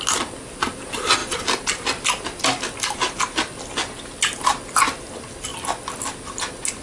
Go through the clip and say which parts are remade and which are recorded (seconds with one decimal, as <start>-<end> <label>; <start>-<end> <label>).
0.0-6.8 recorded